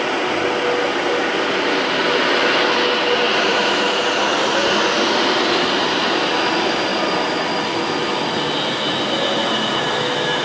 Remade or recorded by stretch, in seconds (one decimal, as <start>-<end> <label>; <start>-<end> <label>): 0.0-3.5 recorded; 3.5-4.6 remade; 4.6-6.9 recorded; 6.9-7.4 remade; 7.4-10.4 recorded